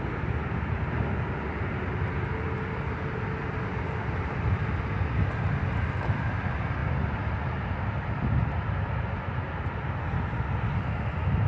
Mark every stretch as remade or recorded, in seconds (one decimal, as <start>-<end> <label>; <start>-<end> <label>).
0.0-11.5 recorded